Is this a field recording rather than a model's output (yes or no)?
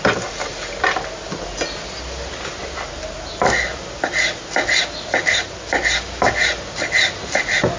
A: yes